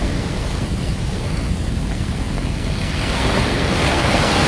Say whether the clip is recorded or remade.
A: remade